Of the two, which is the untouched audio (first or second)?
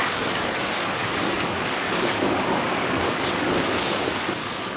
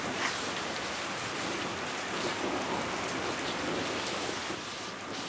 second